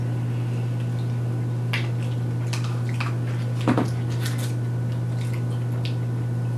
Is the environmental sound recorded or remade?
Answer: recorded